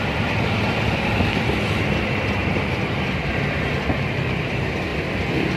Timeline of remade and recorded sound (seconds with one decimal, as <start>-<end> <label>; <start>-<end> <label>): 0.0-2.4 recorded; 2.4-3.3 remade; 3.3-4.9 recorded; 4.9-5.6 remade